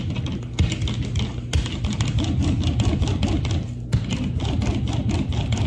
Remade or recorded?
recorded